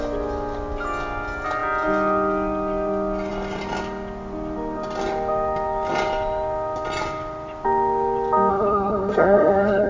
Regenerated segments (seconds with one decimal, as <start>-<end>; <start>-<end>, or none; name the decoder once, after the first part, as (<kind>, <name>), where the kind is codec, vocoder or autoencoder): 8.5-9.9 (codec, SNAC)

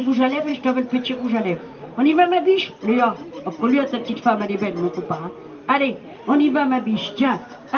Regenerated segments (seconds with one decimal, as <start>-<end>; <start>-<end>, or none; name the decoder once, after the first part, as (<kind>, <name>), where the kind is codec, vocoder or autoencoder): 0.0-0.5 (codec, DAC); 1.6-2.5; 7.2-7.8